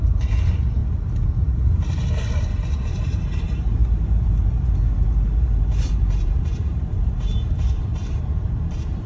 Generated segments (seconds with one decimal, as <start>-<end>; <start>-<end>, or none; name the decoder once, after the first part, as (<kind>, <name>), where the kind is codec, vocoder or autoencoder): 0.0-0.8 (vocoder, BigVGAN v2); 2.8-9.1